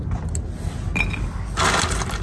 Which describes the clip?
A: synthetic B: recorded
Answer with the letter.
B